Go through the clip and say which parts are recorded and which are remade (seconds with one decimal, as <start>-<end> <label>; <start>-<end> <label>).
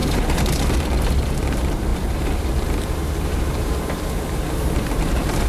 0.0-5.5 remade